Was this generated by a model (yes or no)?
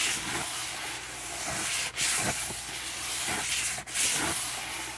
no